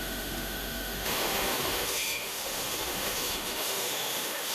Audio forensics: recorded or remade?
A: remade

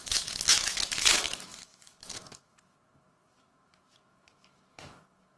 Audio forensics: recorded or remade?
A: remade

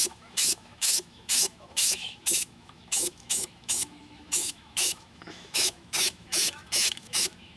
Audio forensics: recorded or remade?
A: remade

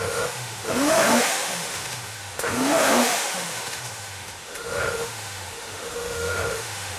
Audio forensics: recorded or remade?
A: remade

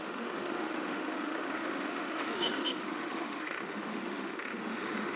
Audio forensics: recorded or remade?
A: remade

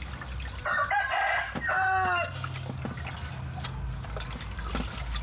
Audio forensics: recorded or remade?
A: recorded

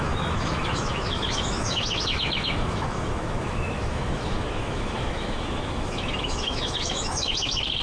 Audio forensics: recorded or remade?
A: remade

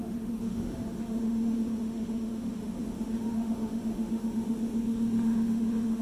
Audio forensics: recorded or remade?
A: remade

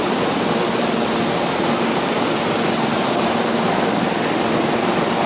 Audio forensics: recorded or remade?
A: recorded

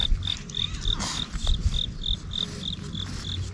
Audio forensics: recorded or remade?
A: recorded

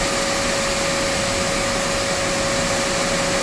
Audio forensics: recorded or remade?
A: recorded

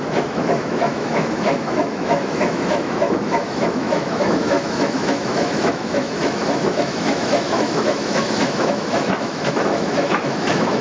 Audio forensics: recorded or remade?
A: remade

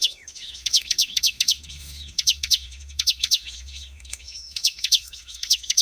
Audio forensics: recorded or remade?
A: remade